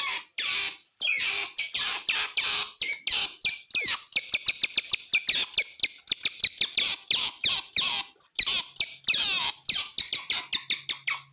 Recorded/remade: recorded